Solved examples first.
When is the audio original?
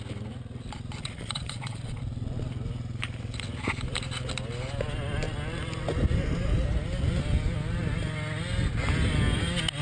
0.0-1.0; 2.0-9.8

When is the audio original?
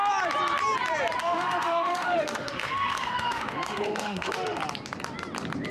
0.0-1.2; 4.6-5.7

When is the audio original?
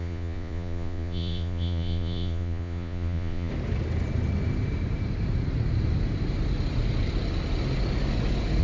3.5-8.6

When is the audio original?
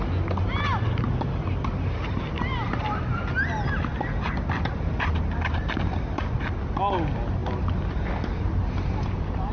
0.0-9.5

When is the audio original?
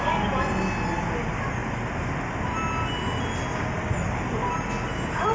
0.0-5.3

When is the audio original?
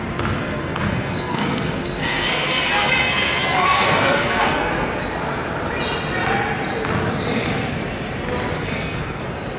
0.0-0.4; 4.7-8.6; 9.2-9.6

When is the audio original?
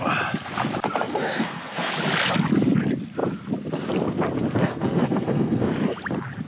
0.0-1.1; 1.9-4.6; 5.7-6.5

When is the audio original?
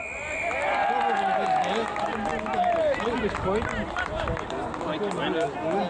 0.0-5.9